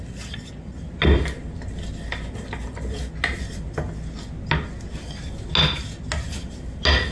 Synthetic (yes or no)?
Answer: no